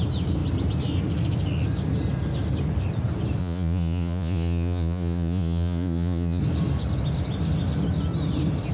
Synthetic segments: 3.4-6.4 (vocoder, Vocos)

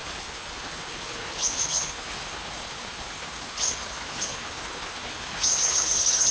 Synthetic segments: 0.0-6.3 (codec, HILCodec)

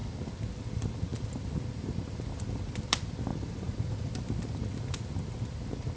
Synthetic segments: 3.3-4.1 (vocoder, Vocos)

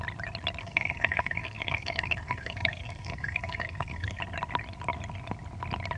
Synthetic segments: 0.6-4.2 (codec, SNAC)

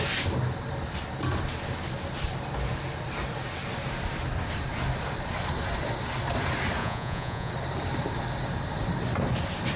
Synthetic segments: 6.8-7.5 (vocoder, Vocos)

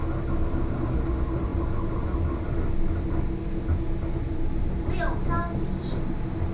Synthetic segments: none

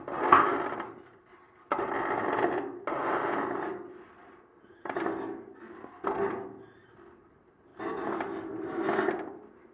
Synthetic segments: none